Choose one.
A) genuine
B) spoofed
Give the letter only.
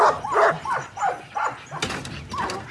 A